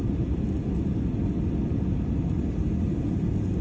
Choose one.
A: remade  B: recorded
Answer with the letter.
A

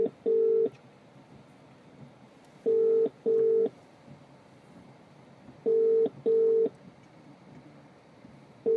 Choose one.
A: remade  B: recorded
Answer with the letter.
B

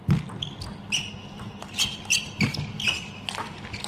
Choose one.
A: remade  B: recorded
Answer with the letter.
B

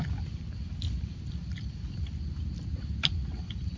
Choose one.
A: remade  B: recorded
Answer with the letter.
A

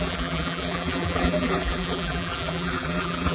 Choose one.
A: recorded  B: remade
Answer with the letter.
B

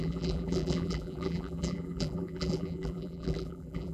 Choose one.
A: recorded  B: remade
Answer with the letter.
B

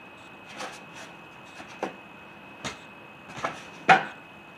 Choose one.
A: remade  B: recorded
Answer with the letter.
B